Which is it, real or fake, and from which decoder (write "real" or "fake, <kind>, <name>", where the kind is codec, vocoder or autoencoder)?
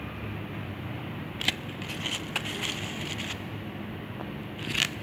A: real